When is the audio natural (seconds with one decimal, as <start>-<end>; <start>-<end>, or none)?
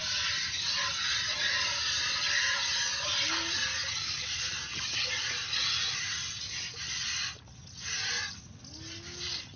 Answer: 0.0-9.6